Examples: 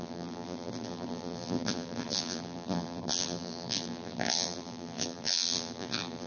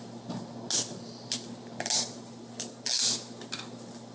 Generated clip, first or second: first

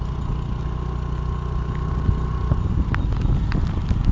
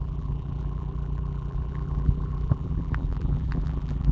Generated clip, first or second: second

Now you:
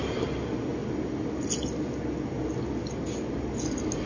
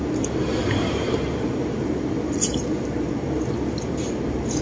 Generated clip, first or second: second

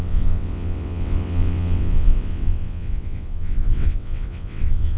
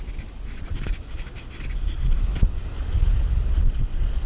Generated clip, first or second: first